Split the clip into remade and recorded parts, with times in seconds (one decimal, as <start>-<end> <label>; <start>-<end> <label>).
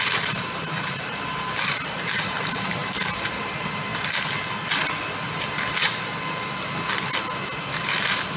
0.0-2.8 remade; 2.8-3.4 recorded; 3.4-3.9 remade; 3.9-8.4 recorded